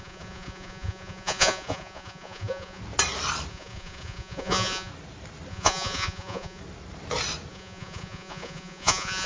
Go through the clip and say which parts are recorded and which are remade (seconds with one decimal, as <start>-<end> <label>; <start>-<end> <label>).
0.0-2.8 remade; 2.8-3.5 recorded; 3.5-4.9 remade; 4.9-5.5 recorded; 5.5-6.6 remade; 6.6-7.5 recorded; 7.5-9.3 remade

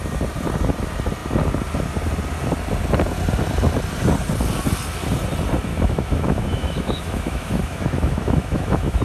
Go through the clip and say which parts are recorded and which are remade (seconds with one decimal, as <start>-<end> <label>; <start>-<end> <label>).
0.0-5.7 recorded; 5.7-9.0 remade

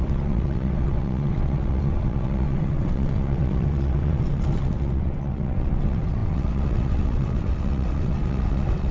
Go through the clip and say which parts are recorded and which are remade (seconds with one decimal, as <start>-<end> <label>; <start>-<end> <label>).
0.0-8.9 remade

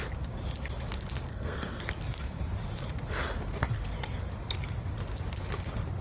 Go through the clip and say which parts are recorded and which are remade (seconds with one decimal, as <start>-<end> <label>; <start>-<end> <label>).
0.0-1.3 recorded; 1.3-1.8 remade; 1.8-6.0 recorded

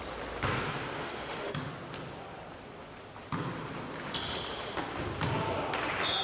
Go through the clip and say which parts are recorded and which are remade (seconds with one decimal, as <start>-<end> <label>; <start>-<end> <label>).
0.0-1.0 recorded; 1.0-1.7 remade; 1.7-6.2 recorded

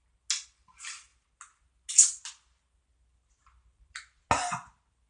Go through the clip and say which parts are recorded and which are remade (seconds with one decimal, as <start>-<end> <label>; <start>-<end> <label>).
0.0-5.1 recorded